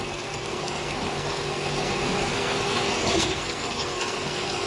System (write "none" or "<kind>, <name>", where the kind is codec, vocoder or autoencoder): codec, SNAC